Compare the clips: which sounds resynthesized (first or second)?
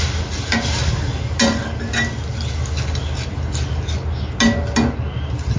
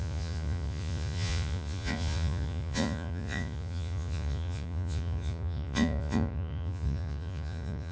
second